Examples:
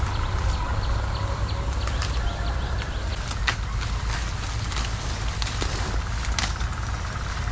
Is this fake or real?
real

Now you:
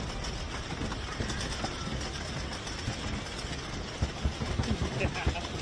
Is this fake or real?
real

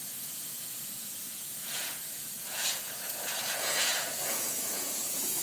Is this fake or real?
fake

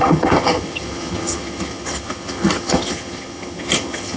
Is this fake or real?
fake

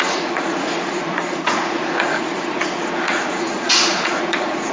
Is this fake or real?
fake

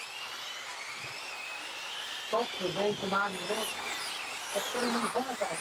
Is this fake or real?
fake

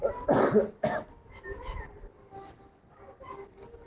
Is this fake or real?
real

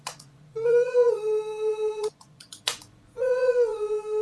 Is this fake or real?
fake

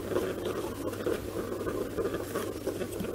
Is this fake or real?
real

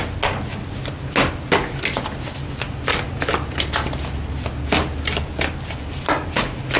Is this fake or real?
real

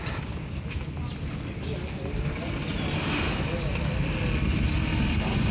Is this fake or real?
real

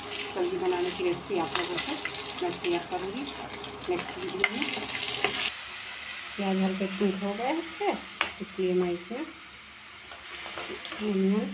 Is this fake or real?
real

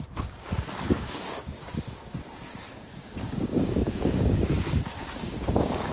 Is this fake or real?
fake